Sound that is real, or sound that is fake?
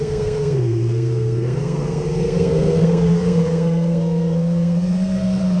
fake